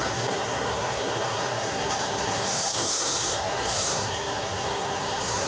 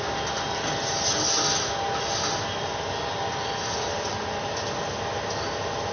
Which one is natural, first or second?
second